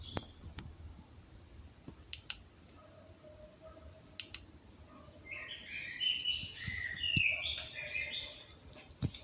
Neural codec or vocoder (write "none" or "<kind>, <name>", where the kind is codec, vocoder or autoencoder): none